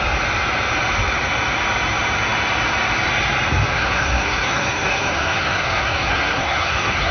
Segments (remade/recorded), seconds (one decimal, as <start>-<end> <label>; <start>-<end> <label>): 0.0-3.7 recorded; 3.7-7.1 remade